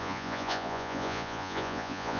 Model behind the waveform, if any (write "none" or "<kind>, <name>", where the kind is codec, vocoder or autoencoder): vocoder, Vocos